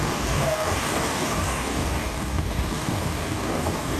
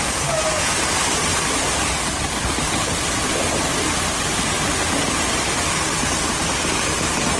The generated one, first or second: first